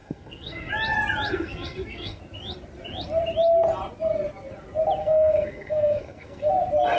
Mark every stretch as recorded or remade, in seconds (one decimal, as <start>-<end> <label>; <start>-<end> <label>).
0.0-0.7 remade; 0.7-1.3 recorded; 1.3-2.2 remade; 2.2-5.0 recorded; 5.0-6.5 remade; 6.5-7.0 recorded